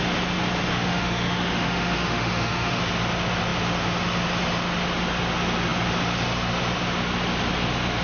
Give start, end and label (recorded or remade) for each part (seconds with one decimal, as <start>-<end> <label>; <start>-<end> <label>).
0.0-0.7 recorded; 0.7-2.8 remade; 2.8-8.0 recorded